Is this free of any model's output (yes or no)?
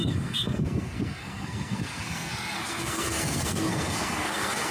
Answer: no